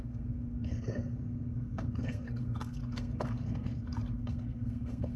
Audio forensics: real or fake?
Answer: fake